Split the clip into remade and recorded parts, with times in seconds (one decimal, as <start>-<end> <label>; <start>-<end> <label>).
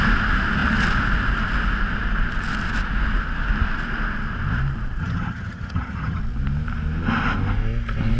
0.0-5.0 recorded; 5.0-6.2 remade; 6.2-8.2 recorded